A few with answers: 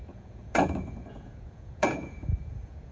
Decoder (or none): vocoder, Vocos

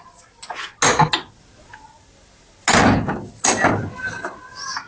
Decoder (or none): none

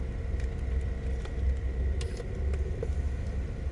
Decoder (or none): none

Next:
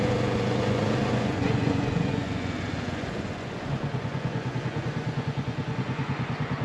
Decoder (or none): vocoder, Vocos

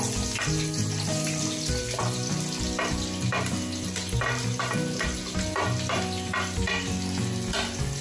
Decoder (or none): none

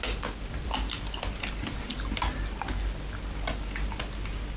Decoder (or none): none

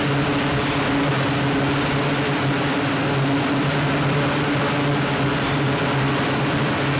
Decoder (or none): none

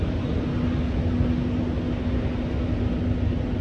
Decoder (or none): none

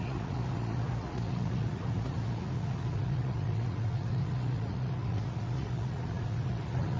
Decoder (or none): vocoder, Vocos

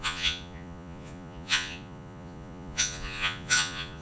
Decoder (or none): vocoder, Vocos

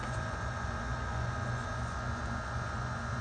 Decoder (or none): vocoder, Vocos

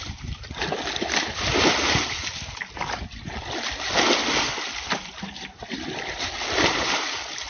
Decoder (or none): none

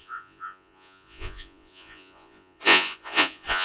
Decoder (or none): vocoder, Vocos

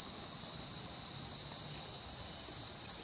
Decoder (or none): none